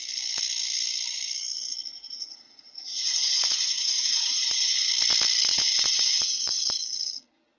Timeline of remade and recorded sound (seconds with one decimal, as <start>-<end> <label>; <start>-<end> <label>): 0.0-1.9 recorded; 1.9-4.9 remade; 4.9-5.5 recorded; 5.5-6.6 remade; 6.6-7.6 recorded